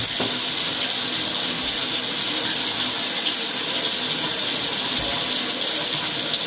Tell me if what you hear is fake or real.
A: real